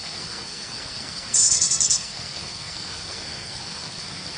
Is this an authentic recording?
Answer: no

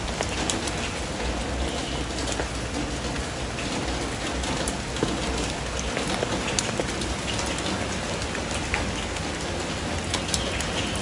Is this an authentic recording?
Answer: yes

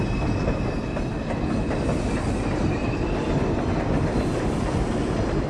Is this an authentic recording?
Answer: yes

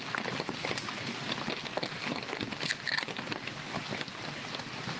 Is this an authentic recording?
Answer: yes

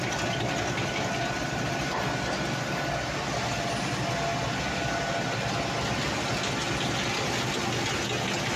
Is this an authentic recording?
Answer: yes